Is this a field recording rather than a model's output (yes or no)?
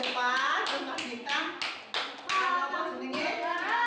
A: yes